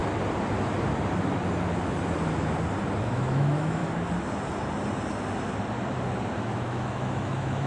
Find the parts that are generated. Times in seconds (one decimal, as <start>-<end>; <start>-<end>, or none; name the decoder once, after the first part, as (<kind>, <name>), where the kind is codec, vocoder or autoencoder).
3.0-3.8 (autoencoder, DAC-VAE); 6.4-7.7